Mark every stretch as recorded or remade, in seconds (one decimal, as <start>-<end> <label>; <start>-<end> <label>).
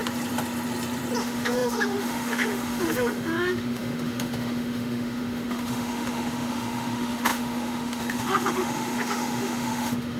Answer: 0.0-1.2 recorded; 1.2-10.2 remade